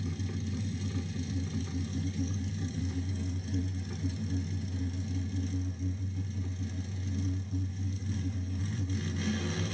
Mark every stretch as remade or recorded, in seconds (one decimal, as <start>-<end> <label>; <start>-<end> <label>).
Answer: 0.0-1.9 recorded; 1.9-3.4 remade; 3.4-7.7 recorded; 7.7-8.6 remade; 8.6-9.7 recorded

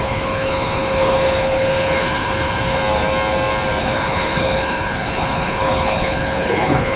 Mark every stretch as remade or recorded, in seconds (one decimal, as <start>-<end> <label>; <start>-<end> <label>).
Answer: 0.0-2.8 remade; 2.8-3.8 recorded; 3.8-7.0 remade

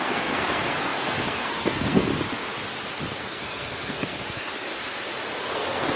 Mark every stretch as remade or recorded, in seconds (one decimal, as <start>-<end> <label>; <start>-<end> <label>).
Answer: 0.0-2.1 remade; 2.1-3.2 recorded; 3.2-4.5 remade; 4.5-5.4 recorded; 5.4-6.0 remade